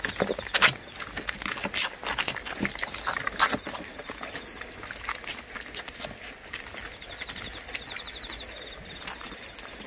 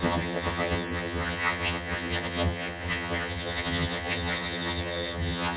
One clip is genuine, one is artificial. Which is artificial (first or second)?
second